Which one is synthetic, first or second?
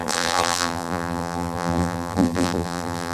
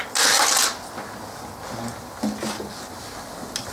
first